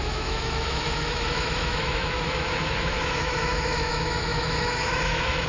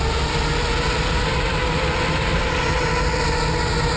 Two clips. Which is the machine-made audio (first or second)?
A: first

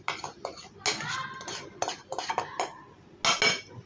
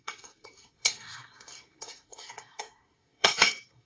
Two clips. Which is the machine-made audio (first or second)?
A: second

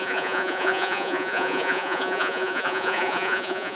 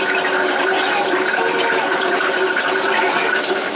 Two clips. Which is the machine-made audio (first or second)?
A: first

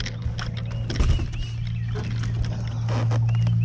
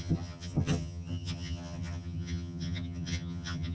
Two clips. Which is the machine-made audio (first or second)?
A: second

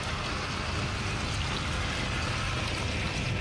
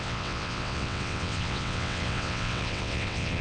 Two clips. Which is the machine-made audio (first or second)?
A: second